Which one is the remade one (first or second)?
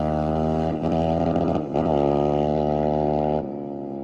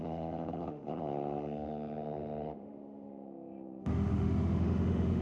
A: second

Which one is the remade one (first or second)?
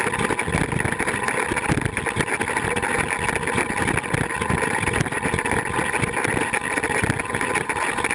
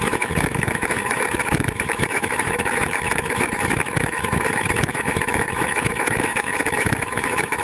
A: second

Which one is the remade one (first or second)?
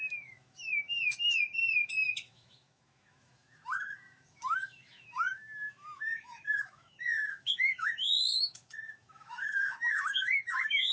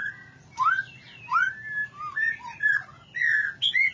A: first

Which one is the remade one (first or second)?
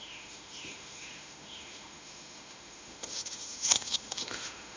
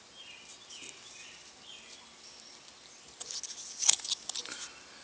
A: first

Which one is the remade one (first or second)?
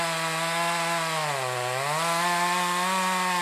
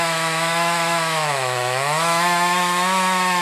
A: second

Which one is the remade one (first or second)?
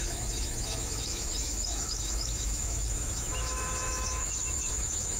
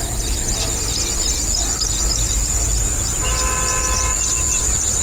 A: first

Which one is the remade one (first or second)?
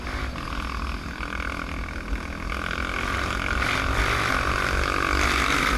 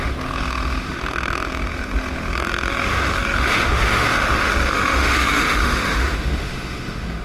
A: second